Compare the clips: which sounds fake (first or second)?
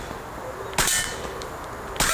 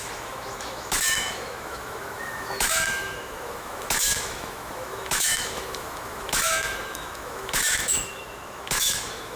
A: second